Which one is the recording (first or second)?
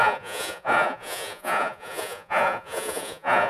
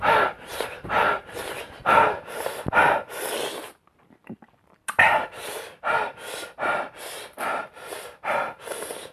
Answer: second